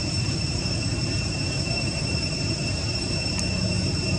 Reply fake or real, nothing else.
fake